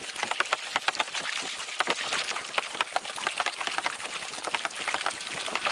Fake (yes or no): no